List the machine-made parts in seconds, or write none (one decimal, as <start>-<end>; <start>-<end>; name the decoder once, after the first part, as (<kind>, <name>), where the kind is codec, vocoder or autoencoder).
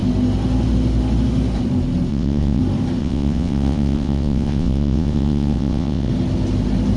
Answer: 2.1-2.6 (vocoder, WaveNeXt); 3.0-6.1